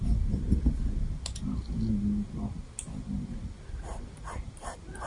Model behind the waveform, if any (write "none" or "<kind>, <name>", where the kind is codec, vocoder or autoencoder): none